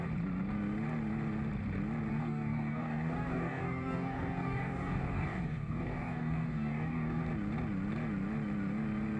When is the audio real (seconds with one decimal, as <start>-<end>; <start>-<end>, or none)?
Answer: 0.0-2.1; 7.2-9.2